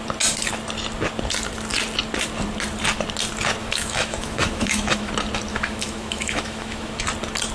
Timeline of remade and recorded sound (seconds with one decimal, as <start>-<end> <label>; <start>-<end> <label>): 0.0-3.6 recorded; 3.6-5.1 remade; 5.1-5.5 recorded; 5.5-7.0 remade; 7.0-7.5 recorded